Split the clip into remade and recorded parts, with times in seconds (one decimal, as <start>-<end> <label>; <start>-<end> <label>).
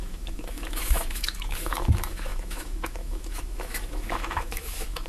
0.0-5.1 remade